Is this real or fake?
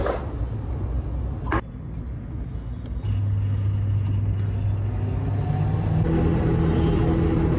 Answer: real